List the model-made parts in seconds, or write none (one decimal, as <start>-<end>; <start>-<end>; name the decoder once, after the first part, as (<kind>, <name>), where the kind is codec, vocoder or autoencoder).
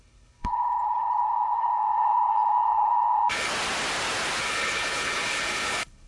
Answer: 0.0-3.5 (codec, HILCodec); 4.4-6.1